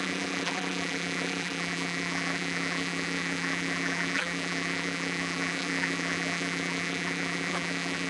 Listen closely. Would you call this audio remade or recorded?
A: remade